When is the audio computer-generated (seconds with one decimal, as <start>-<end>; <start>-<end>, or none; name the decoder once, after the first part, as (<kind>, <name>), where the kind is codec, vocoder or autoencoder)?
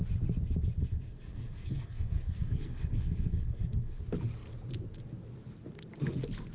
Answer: 0.8-4.0 (codec, SNAC)